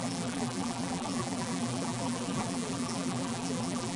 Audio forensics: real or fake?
fake